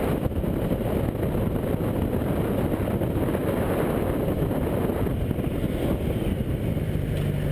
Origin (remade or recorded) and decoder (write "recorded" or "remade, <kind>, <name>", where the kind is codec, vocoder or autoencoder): recorded